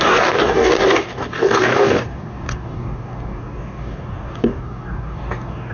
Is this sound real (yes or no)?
no